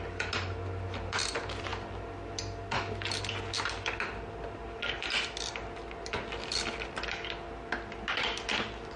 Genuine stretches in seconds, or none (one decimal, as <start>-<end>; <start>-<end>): 0.0-9.0